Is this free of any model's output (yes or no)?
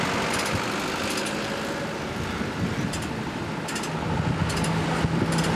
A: yes